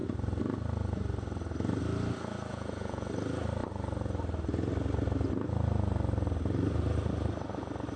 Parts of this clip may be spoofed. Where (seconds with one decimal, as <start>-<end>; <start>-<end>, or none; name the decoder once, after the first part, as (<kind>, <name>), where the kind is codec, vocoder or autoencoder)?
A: 2.5-3.1 (vocoder, Vocos)